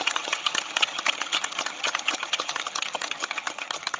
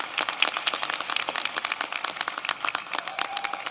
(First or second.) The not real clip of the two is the first